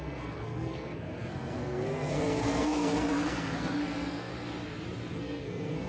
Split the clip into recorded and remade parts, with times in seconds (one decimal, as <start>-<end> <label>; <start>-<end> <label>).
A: 0.0-4.3 remade; 4.3-5.1 recorded; 5.1-5.9 remade